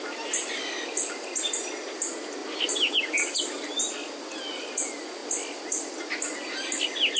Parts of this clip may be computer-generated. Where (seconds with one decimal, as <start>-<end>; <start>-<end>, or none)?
none